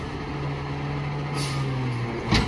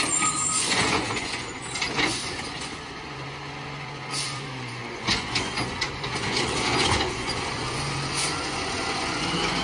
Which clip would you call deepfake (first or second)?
second